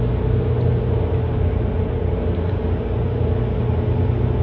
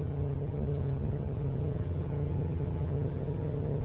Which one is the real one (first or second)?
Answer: first